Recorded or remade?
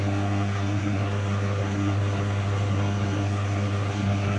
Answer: remade